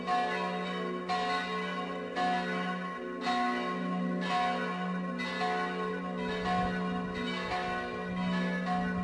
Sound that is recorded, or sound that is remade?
recorded